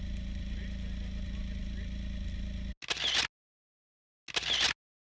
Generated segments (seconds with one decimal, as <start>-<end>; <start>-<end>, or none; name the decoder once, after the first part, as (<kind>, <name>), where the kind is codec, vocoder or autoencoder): none